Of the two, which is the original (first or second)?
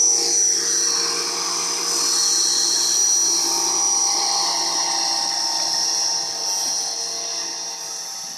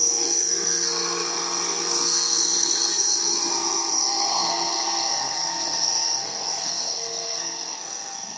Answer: first